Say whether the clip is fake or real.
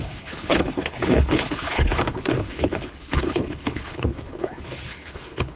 fake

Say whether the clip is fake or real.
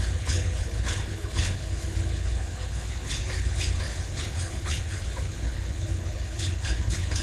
fake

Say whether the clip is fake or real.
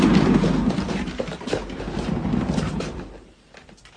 real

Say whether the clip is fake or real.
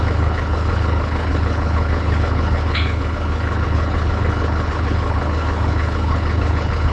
fake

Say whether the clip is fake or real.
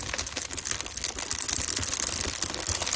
real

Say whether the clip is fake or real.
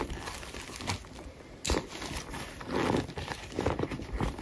real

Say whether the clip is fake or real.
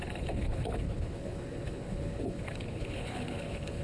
fake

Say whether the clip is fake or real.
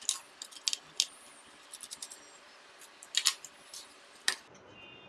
real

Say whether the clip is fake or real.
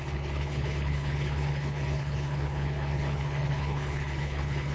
fake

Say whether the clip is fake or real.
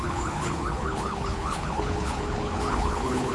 fake